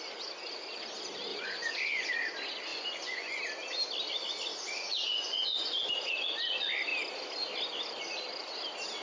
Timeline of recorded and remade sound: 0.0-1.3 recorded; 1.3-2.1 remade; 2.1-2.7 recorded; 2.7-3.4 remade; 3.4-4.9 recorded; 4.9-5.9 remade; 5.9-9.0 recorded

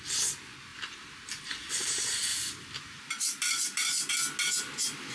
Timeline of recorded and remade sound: 0.0-0.7 recorded; 0.7-1.7 remade; 1.7-2.3 recorded; 2.3-4.1 remade; 4.1-5.1 recorded

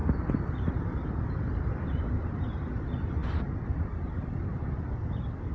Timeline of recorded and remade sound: 0.0-5.5 recorded

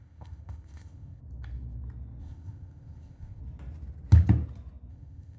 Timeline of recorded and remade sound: 0.0-1.2 remade; 1.2-2.2 recorded; 2.2-3.4 remade; 3.4-4.9 recorded; 4.9-5.4 remade

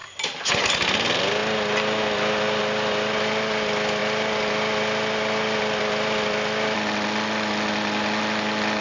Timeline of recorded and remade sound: 0.0-8.8 recorded